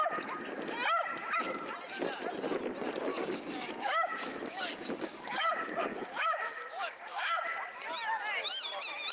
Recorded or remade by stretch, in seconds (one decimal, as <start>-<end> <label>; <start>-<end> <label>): 0.0-3.1 recorded; 3.1-7.5 remade; 7.5-9.1 recorded